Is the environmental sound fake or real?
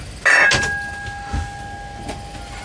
real